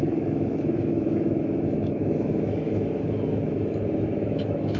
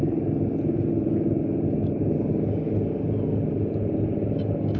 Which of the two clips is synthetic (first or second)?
first